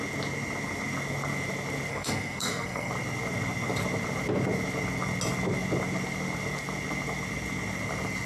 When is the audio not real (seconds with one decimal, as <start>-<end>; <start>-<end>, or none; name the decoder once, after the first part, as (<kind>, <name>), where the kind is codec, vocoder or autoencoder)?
1.9-2.9 (codec, SNAC)